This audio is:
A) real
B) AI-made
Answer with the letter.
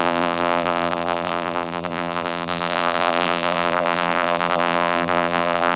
B